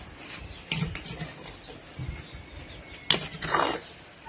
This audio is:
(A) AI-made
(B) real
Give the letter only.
B